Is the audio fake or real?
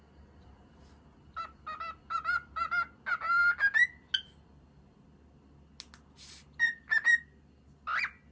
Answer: real